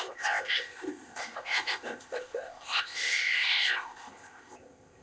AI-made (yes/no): yes